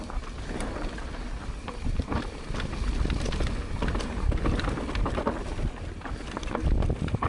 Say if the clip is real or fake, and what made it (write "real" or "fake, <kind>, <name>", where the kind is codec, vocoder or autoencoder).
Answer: real